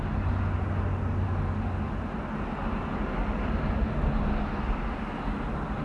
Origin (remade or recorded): recorded